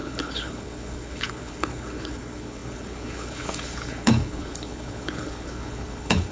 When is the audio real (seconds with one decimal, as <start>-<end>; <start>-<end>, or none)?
none